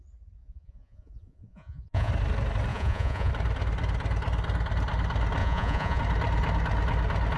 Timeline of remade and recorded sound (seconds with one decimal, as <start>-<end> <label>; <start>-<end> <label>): 0.0-0.4 recorded; 0.4-2.1 remade; 2.1-2.7 recorded; 2.7-3.3 remade; 3.3-5.4 recorded; 5.4-6.0 remade; 6.0-7.4 recorded